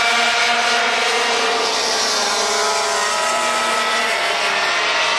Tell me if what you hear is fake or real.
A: real